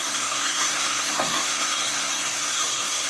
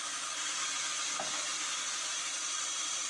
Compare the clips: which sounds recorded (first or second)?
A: second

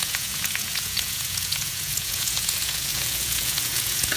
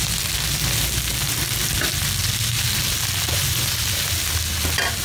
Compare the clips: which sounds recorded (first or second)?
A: second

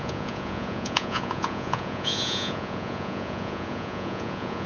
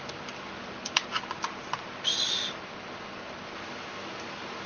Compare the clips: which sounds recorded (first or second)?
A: second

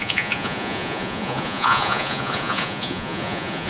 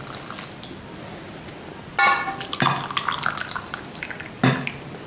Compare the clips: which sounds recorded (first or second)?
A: second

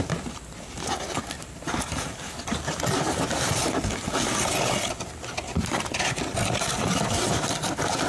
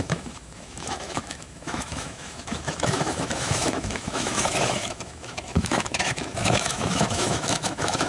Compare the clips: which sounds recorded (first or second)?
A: first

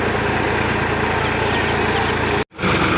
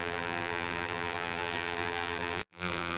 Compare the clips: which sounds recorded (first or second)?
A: first